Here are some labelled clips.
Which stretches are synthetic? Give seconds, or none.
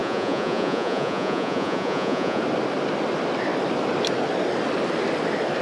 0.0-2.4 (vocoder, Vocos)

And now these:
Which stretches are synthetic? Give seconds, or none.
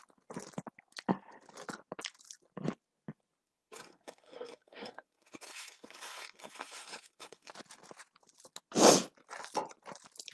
3.4-7.5 (codec, SNAC)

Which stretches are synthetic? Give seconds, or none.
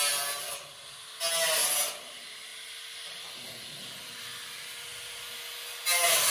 none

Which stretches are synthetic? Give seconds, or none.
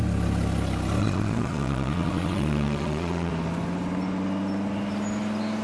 1.0-3.3 (vocoder, Vocos)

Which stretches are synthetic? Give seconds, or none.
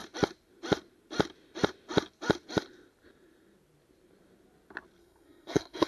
5.0-5.9 (codec, SNAC)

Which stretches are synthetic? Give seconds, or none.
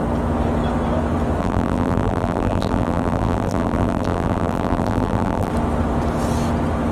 1.4-5.5 (vocoder, BigVGAN v2)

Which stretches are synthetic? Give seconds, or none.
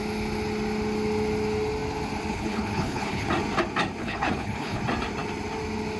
2.3-3.3 (codec, HILCodec); 4.0-4.8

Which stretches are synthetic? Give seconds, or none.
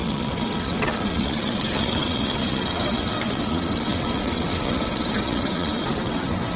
0.0-6.6 (vocoder, WaveNeXt)